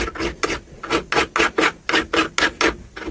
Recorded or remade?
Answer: recorded